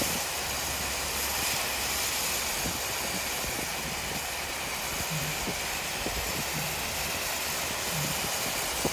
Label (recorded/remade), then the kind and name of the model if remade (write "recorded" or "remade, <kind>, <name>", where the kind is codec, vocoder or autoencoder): recorded